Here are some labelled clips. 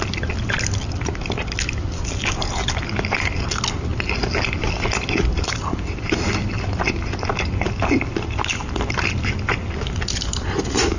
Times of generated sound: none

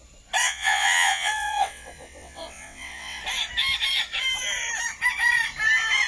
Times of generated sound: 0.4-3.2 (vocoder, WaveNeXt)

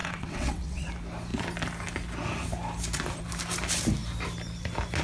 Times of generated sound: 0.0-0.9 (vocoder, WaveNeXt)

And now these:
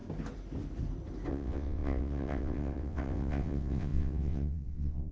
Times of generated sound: 1.3-5.1 (vocoder, WaveNeXt)